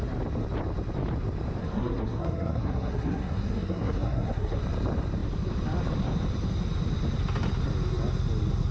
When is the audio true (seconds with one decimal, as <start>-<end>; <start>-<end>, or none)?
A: 0.0-1.6; 4.6-8.7